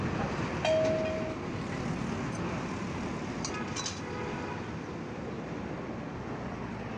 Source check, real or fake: real